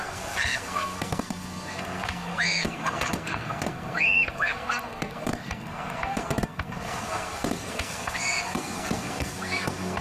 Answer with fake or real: fake